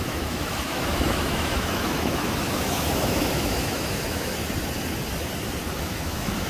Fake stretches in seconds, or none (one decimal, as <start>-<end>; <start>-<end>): 0.0-4.4; 5.8-6.5